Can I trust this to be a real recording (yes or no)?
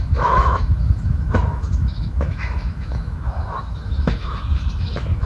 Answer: no